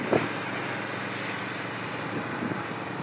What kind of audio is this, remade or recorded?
recorded